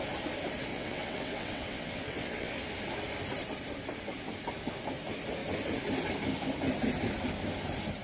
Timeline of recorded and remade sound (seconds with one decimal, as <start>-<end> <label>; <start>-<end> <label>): 0.0-0.7 recorded; 0.7-2.5 remade; 2.5-8.0 recorded